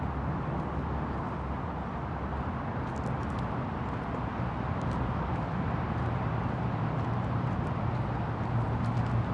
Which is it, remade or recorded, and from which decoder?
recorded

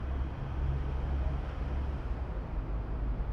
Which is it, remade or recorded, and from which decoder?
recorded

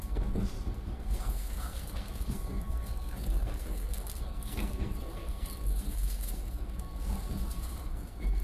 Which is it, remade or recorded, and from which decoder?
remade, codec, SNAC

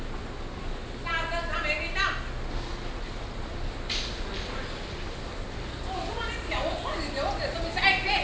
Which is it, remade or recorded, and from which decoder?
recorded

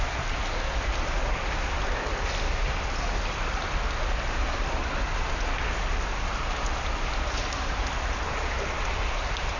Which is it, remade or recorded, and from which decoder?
recorded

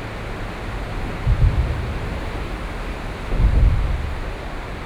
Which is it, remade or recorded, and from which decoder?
recorded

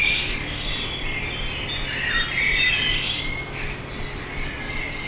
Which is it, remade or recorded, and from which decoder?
recorded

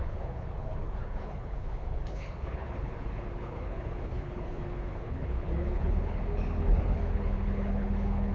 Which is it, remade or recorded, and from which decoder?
remade, codec, HILCodec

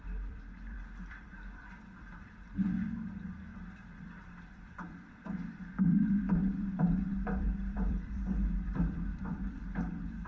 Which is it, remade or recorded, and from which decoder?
remade, vocoder, BigVGAN v2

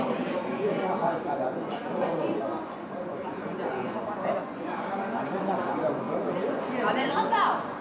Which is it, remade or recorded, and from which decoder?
remade, vocoder, Vocos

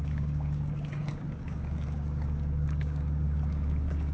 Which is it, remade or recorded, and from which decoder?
remade, codec, DAC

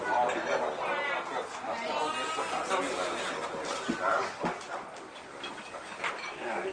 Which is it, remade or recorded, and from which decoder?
recorded